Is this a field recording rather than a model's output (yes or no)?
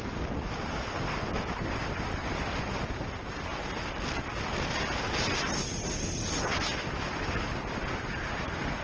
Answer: yes